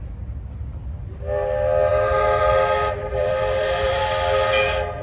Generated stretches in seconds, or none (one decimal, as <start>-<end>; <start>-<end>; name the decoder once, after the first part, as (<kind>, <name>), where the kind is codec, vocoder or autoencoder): 3.0-4.0 (vocoder, BigVGAN v2)